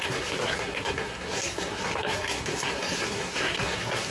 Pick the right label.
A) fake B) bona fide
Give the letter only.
A